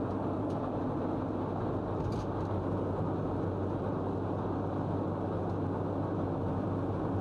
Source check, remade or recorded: recorded